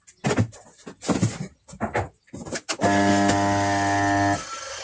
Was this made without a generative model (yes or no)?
yes